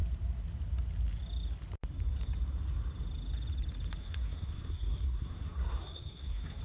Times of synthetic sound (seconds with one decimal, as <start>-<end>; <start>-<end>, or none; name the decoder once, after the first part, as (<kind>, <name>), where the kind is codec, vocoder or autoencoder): 4.0-6.6 (codec, SNAC)